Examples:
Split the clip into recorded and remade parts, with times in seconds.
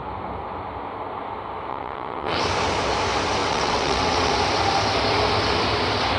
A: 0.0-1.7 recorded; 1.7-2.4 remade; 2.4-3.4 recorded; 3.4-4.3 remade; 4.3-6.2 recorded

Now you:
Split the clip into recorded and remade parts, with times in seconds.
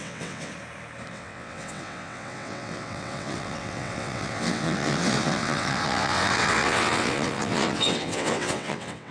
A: 0.0-0.5 remade; 0.5-1.1 recorded; 1.1-9.1 remade